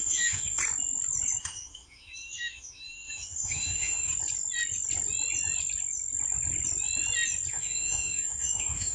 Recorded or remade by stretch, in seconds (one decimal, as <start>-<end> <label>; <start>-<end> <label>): 0.0-0.6 remade; 0.6-1.4 recorded; 1.4-4.1 remade; 4.1-7.5 recorded; 7.5-8.9 remade